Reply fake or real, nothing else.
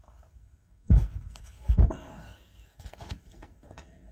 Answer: fake